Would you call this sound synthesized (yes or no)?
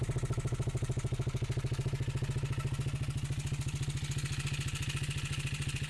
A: no